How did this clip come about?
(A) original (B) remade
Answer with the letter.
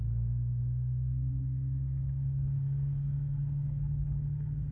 B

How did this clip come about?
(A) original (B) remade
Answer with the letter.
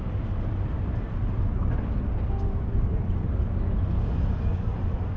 A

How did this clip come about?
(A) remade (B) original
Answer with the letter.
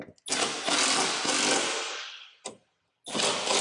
B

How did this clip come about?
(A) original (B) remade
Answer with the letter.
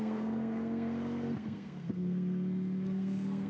B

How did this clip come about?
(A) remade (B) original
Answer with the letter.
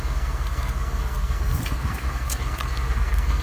A